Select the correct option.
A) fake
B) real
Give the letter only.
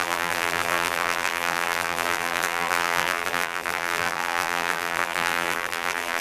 A